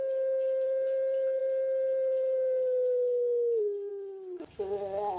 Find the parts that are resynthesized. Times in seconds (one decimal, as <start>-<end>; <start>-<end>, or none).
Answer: none